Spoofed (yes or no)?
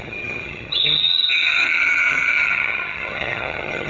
yes